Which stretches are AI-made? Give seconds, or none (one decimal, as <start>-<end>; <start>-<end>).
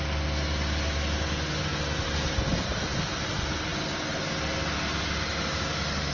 none